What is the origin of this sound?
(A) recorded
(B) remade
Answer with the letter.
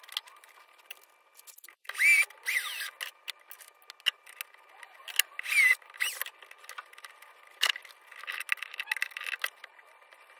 A